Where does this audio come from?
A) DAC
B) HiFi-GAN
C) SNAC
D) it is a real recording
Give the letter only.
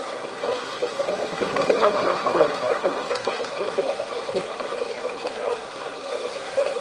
C